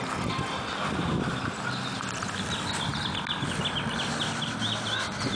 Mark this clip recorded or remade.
recorded